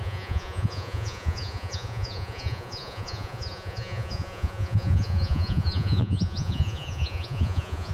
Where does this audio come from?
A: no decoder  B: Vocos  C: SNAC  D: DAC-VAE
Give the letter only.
B